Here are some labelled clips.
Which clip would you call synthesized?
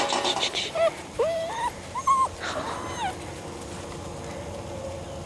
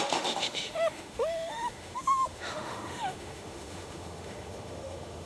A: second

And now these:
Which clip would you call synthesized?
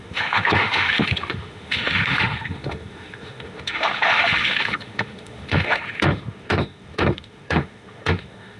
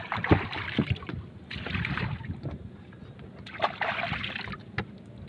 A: first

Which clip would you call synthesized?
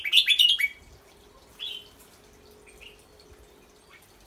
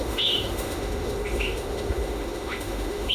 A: second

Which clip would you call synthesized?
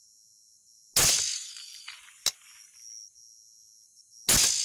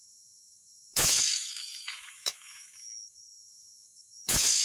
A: second